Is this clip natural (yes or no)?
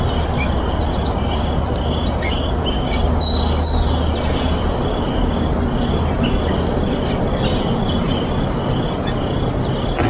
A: yes